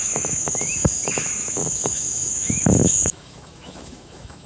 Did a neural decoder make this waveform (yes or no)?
yes